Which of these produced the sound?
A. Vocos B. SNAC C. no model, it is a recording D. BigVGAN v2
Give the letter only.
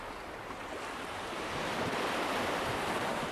C